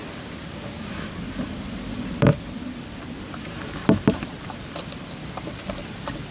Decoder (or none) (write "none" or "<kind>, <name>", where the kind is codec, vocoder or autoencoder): vocoder, BigVGAN v2